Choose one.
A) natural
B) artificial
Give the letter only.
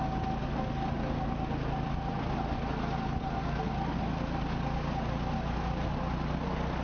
A